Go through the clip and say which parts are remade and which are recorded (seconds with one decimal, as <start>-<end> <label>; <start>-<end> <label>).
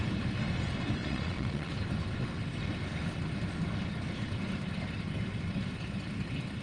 0.0-1.0 recorded; 1.0-1.7 remade; 1.7-6.6 recorded